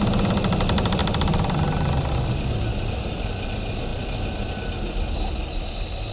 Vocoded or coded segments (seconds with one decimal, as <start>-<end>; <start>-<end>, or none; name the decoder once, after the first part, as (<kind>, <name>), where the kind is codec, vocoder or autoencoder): none